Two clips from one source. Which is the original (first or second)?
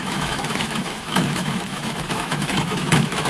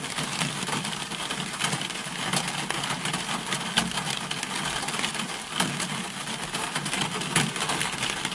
second